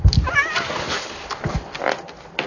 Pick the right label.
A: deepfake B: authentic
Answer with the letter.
B